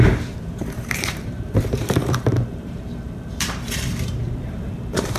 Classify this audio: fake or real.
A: fake